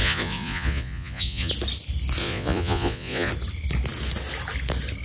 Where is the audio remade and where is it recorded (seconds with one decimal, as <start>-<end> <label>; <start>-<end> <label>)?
0.0-1.5 remade; 1.5-2.2 recorded; 2.2-3.3 remade; 3.3-5.0 recorded